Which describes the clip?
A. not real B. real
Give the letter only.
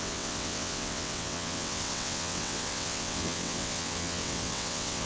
A